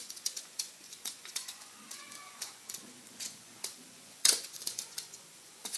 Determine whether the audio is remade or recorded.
remade